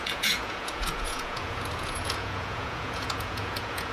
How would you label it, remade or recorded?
remade